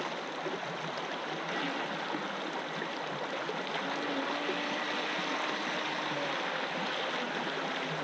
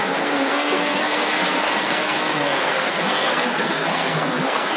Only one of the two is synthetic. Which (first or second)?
second